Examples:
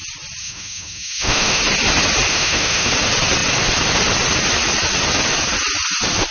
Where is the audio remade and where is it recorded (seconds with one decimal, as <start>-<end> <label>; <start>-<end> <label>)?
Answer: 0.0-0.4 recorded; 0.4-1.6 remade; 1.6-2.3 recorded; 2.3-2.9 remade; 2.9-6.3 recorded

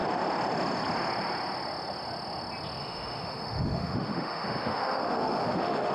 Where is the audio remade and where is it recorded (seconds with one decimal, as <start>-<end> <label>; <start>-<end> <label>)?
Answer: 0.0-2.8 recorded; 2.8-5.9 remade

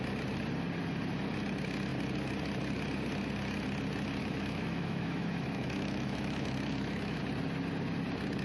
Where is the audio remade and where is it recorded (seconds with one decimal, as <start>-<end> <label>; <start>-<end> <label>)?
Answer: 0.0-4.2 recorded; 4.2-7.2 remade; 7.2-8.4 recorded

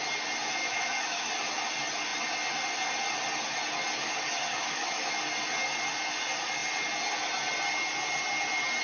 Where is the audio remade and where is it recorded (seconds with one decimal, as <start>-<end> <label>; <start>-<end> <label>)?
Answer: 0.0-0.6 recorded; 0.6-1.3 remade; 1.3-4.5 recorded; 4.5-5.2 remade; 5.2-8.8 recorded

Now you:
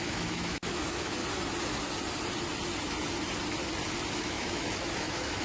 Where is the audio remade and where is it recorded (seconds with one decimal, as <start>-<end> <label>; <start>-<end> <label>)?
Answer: 0.0-1.2 remade; 1.2-4.1 recorded; 4.1-5.4 remade

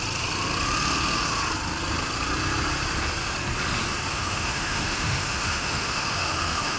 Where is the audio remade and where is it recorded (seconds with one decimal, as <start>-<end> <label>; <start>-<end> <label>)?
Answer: 0.0-4.1 recorded; 4.1-6.8 remade